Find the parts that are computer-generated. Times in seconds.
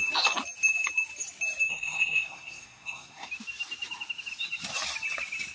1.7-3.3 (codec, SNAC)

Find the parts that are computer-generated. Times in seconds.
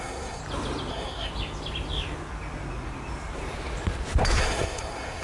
0.0-0.4 (codec, SNAC); 0.9-1.3; 4.4-5.2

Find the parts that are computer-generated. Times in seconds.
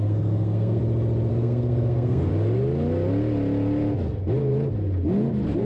0.0-0.8 (codec, SNAC); 1.3-2.3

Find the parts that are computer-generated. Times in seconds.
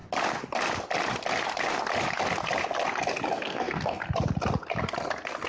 3.3-4.0 (codec, SNAC)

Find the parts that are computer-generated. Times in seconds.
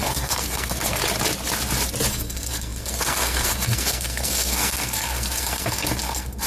0.0-1.0 (codec, SNAC); 2.1-6.5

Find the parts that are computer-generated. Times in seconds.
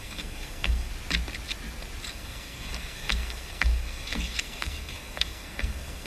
0.0-0.9 (codec, SNAC); 2.1-6.1